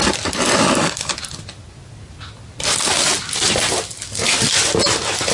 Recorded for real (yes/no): yes